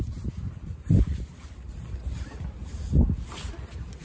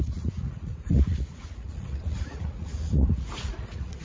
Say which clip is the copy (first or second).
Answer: second